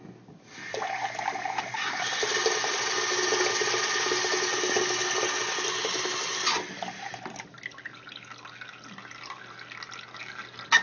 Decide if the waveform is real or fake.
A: real